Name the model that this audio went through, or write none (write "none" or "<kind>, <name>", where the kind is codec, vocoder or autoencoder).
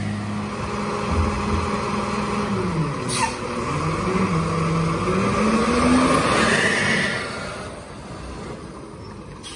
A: none